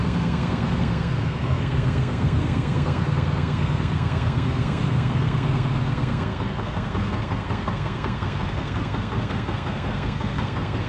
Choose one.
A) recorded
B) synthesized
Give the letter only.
B